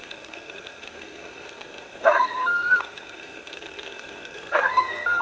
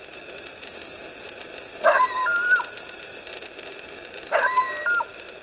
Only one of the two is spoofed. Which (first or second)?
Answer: first